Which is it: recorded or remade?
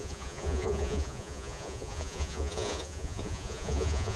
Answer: remade